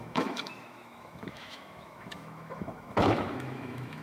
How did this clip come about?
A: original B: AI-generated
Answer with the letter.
B